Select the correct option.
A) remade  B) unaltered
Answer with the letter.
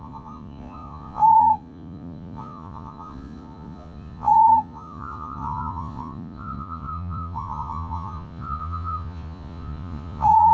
A